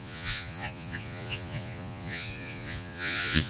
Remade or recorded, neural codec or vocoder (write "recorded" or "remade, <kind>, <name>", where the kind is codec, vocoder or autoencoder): remade, vocoder, Vocos